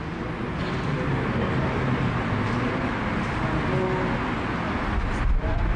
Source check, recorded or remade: recorded